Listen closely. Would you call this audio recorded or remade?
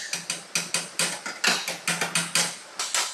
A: recorded